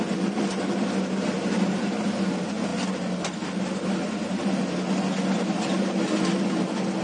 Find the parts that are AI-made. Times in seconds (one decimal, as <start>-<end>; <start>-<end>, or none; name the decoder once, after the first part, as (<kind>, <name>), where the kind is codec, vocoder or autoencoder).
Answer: none